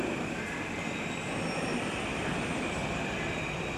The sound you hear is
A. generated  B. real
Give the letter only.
B